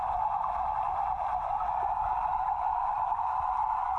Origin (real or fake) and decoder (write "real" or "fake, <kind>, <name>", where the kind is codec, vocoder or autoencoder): fake, vocoder, BigVGAN v2